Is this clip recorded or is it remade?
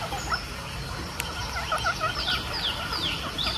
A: recorded